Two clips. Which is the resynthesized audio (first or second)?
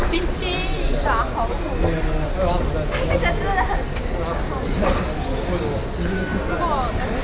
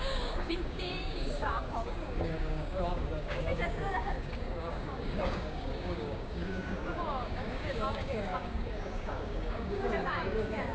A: second